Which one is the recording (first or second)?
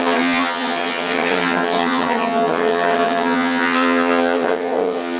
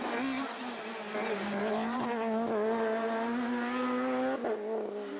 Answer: second